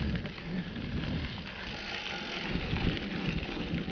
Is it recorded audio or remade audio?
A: recorded